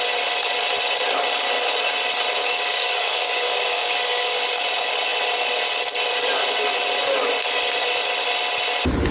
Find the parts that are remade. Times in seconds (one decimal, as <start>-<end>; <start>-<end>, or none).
2.4-4.6

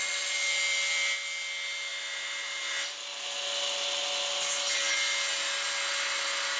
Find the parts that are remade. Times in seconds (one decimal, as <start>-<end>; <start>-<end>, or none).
none

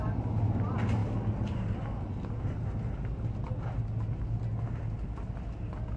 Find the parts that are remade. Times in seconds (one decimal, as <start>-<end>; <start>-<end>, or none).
none

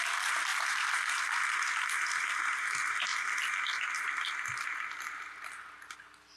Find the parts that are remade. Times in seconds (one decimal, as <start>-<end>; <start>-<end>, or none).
none

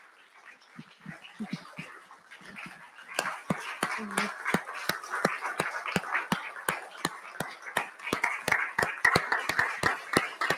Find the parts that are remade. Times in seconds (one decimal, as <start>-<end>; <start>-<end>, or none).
5.5-6.5